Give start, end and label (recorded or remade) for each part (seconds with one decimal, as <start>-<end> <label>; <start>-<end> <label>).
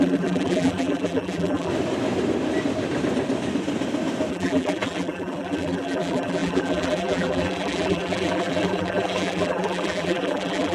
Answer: 0.0-1.7 remade; 1.7-4.3 recorded; 4.3-10.7 remade